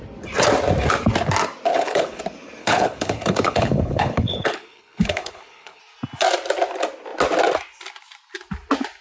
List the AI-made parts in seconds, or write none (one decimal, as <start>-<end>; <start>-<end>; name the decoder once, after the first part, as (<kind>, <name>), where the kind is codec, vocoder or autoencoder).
1.7-2.2 (codec, HILCodec); 2.6-5.8